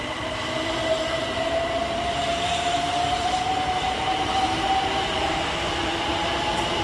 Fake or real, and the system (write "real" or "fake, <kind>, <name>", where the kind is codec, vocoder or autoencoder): fake, vocoder, BigVGAN v2